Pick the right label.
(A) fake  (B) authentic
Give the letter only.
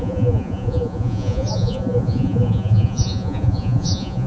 A